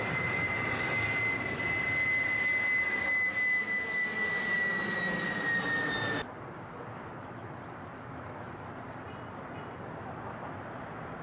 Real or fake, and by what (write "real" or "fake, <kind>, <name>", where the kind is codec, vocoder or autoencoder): real